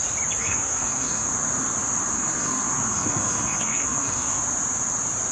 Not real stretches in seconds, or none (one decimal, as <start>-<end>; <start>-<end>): 0.4-1.3; 2.1-4.4